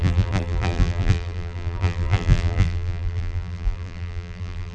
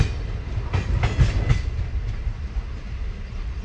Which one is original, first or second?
second